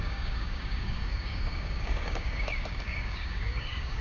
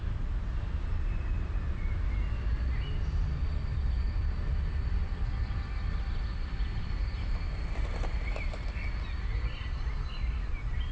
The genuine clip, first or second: second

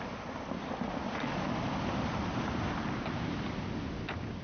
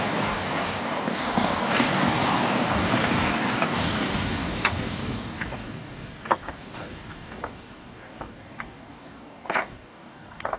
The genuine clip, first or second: first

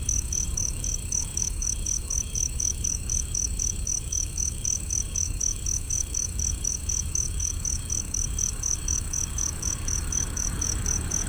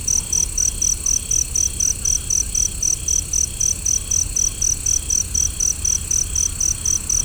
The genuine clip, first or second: second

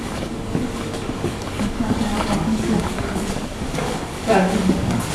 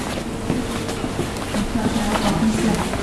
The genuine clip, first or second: second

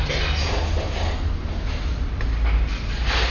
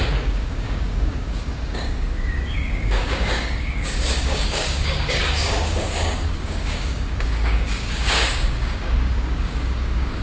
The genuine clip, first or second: first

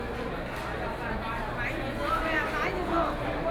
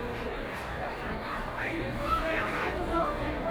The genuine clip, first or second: first